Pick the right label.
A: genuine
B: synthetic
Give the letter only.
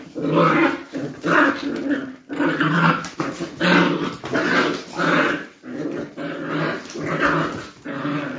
A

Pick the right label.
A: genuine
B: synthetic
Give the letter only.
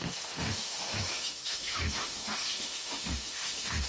B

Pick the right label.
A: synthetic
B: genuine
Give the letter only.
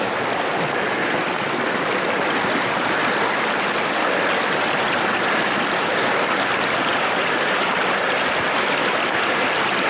B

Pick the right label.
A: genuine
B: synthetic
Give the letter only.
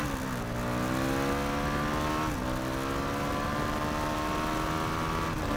A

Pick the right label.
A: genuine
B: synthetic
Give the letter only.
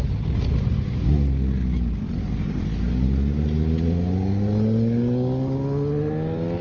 A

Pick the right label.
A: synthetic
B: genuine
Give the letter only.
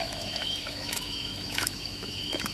A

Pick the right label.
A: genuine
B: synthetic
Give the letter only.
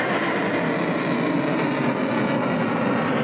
A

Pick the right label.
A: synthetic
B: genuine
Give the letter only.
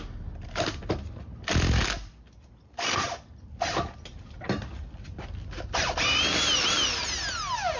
B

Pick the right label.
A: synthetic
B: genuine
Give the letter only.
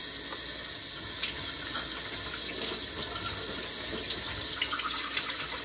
B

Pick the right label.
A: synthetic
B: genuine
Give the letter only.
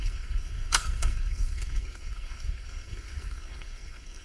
A